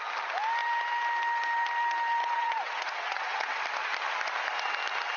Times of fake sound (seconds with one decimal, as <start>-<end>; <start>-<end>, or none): 2.2-3.6